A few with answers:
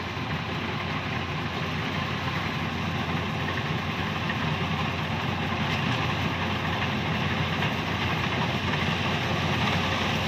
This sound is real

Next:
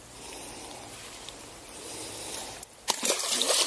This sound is real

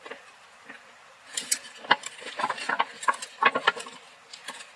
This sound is real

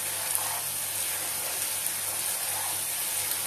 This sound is real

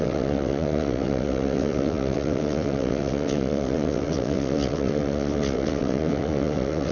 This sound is fake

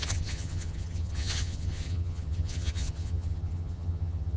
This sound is fake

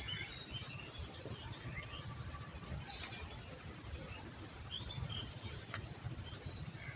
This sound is real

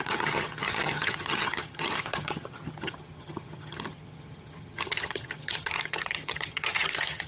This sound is fake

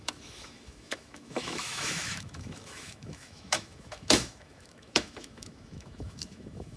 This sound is fake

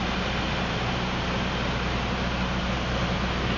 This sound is real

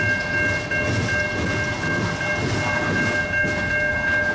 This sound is real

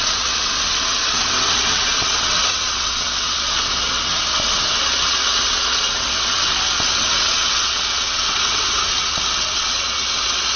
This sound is fake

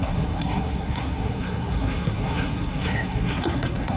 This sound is fake